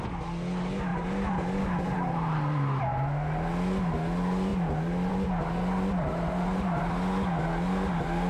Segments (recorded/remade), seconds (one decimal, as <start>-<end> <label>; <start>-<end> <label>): 0.0-0.9 recorded; 0.9-2.8 remade; 2.8-6.1 recorded; 6.1-6.9 remade; 6.9-8.3 recorded

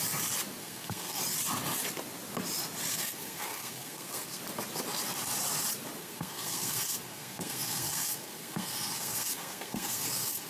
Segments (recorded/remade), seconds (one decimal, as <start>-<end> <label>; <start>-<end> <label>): 0.0-0.6 recorded; 0.6-1.2 remade; 1.2-2.9 recorded; 2.9-4.4 remade; 4.4-6.0 recorded; 6.0-10.5 remade

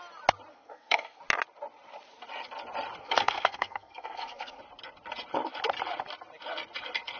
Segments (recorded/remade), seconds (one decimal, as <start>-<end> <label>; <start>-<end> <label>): 0.0-0.5 recorded; 0.5-1.2 remade; 1.2-3.0 recorded; 3.0-4.6 remade; 4.6-7.2 recorded

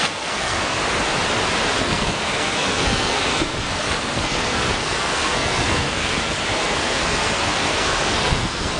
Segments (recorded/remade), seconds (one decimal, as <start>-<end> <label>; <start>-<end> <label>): 0.0-0.8 remade; 0.8-1.8 recorded; 1.8-8.8 remade

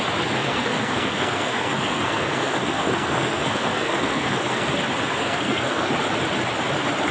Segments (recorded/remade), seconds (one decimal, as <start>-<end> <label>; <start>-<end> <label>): 0.0-0.4 recorded; 0.4-4.7 remade; 4.7-5.2 recorded; 5.2-5.9 remade; 5.9-7.1 recorded